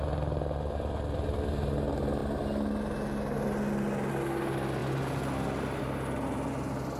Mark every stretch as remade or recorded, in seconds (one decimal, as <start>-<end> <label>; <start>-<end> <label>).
0.0-7.0 recorded